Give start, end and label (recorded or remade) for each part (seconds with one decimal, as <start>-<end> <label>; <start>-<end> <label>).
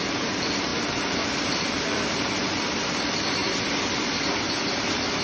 0.0-3.4 remade; 3.4-4.7 recorded; 4.7-5.2 remade